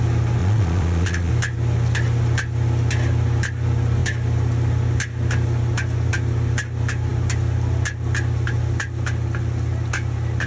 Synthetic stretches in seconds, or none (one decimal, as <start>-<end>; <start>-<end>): 0.4-1.3